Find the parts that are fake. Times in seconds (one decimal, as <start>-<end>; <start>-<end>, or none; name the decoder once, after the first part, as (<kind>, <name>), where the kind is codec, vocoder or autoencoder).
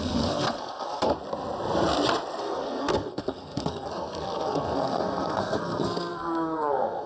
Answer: 0.0-1.1 (codec, SNAC); 2.4-7.1